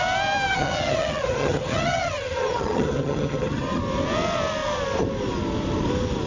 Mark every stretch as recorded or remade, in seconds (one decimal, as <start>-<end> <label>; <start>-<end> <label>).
0.0-0.5 recorded; 0.5-3.8 remade; 3.8-6.3 recorded